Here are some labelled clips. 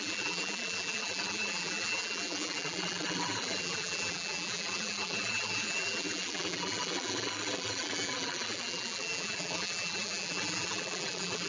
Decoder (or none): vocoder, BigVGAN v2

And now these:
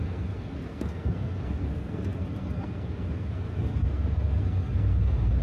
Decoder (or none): codec, SNAC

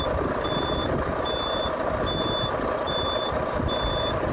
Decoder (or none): vocoder, BigVGAN v2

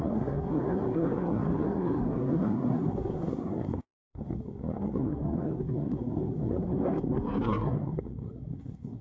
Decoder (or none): codec, SNAC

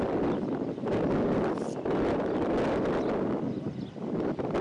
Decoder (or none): none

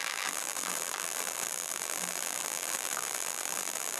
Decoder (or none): vocoder, BigVGAN v2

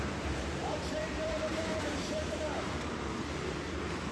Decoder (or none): vocoder, BigVGAN v2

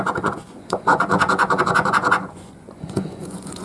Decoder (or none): vocoder, Vocos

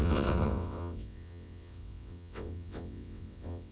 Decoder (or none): vocoder, WaveNeXt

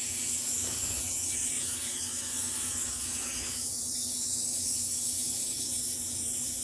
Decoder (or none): codec, DAC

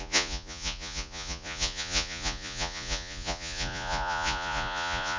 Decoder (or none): vocoder, Vocos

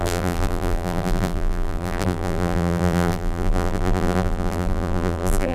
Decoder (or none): vocoder, BigVGAN v2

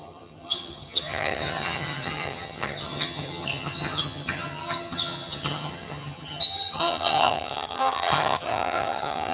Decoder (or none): vocoder, HiFi-GAN